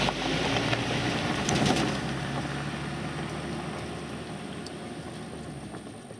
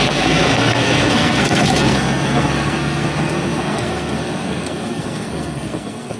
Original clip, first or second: first